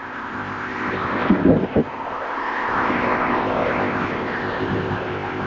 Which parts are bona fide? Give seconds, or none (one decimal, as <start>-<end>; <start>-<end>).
none